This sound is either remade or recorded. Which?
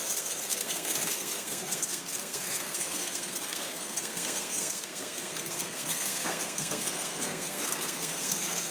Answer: remade